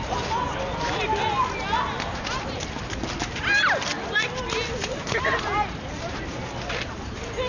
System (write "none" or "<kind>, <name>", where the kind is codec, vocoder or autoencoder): none